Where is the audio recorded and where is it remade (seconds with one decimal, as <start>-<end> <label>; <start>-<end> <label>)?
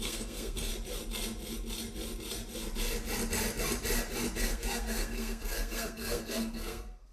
0.0-0.7 remade; 0.7-4.4 recorded; 4.4-7.1 remade